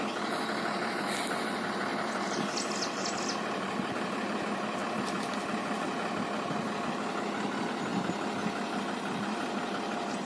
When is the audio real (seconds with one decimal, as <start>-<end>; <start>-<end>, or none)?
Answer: 0.0-10.3